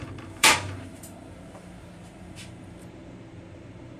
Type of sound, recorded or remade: remade